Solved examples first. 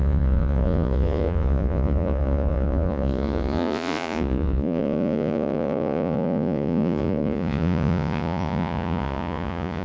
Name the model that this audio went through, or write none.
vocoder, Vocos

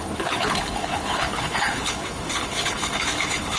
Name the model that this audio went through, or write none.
codec, HILCodec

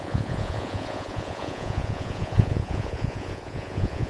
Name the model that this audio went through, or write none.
vocoder, Vocos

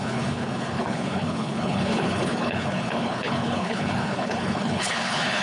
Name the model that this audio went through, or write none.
codec, HILCodec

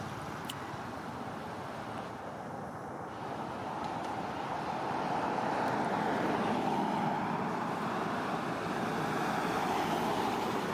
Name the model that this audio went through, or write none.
vocoder, BigVGAN v2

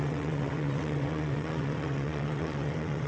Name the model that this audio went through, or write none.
vocoder, WaveNeXt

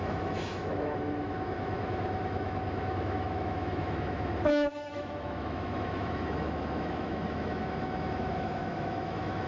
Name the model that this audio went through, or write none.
autoencoder, DAC-VAE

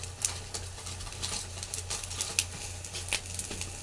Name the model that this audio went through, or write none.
none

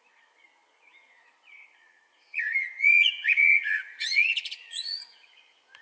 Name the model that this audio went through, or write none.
vocoder, Vocos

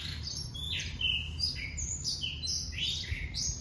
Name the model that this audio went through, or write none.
vocoder, BigVGAN v2